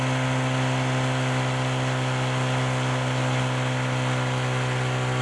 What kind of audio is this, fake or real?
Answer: real